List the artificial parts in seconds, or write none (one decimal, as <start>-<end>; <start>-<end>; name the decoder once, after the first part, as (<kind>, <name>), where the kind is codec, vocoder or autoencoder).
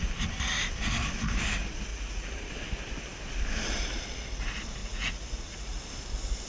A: 1.9-2.5 (vocoder, Vocos); 4.8-5.8